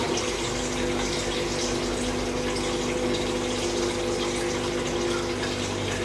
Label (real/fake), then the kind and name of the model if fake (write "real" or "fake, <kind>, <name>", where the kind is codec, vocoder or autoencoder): real